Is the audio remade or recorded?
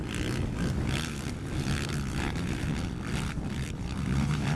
recorded